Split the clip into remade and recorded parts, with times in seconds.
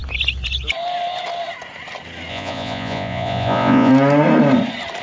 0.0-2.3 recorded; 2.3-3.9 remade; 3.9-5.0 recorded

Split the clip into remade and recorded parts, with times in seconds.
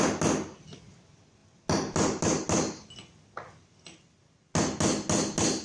0.0-5.6 recorded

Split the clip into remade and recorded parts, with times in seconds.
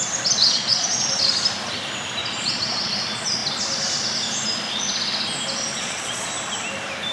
0.0-0.4 recorded; 0.4-1.1 remade; 1.1-2.2 recorded; 2.2-2.9 remade; 2.9-5.7 recorded; 5.7-6.3 remade; 6.3-7.1 recorded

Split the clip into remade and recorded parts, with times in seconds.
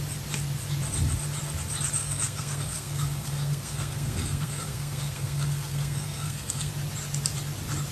0.0-2.0 recorded; 2.0-6.7 remade; 6.7-7.9 recorded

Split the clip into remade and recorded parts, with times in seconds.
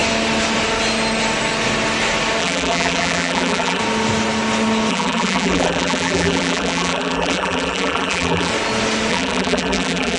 0.0-2.4 recorded; 2.4-3.8 remade; 3.8-4.9 recorded; 4.9-8.5 remade; 8.5-9.1 recorded; 9.1-10.2 remade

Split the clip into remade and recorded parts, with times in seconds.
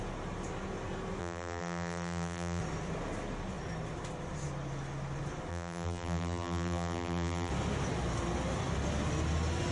0.0-1.2 recorded; 1.2-2.6 remade; 2.6-5.5 recorded; 5.5-7.5 remade; 7.5-9.7 recorded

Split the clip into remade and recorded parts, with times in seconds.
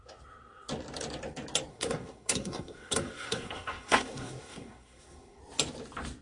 0.0-1.7 recorded; 1.7-5.4 remade; 5.4-6.2 recorded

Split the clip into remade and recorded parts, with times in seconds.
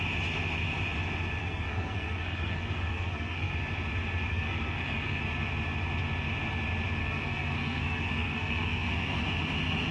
0.0-1.4 recorded; 1.4-3.5 remade; 3.5-4.3 recorded; 4.3-5.2 remade; 5.2-7.0 recorded; 7.0-9.2 remade; 9.2-9.9 recorded